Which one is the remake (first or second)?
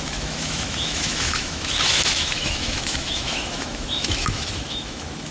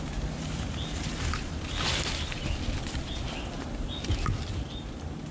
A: first